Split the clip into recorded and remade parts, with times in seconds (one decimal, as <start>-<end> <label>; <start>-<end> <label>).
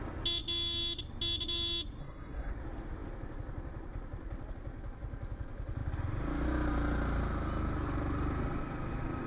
0.0-2.0 recorded; 2.0-2.5 remade; 2.5-9.3 recorded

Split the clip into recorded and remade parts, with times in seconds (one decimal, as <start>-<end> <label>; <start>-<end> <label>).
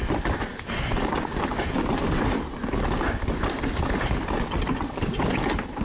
0.0-5.8 recorded